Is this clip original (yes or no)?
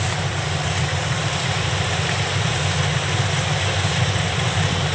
yes